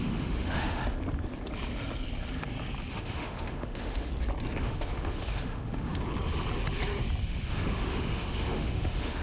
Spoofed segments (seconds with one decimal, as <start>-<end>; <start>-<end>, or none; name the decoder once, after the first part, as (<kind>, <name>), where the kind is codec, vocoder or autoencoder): 0.0-0.8 (autoencoder, DAC-VAE); 2.9-4.1; 4.6-5.9; 7.2-9.2